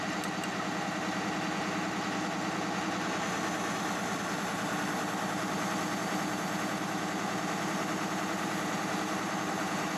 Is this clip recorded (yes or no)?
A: yes